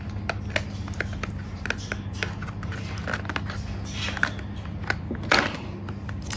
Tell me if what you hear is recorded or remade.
recorded